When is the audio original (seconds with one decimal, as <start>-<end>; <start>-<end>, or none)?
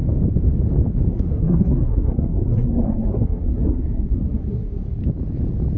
0.0-1.1; 5.0-5.8